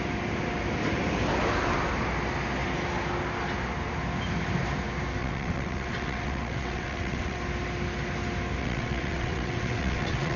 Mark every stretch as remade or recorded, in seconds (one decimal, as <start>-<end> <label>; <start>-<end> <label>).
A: 0.0-5.2 recorded; 5.2-7.4 remade; 7.4-8.6 recorded; 8.6-10.4 remade